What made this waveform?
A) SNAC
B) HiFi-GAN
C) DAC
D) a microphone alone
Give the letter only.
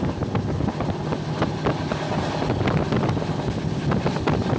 D